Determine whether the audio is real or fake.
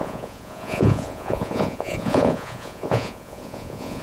fake